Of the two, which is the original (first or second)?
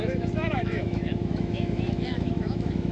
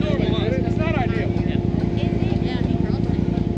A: second